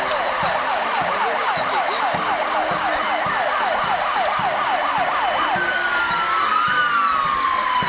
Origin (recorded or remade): recorded